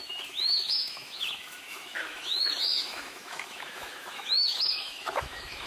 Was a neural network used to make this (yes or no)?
yes